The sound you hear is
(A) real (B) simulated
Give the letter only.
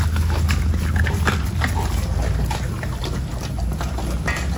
A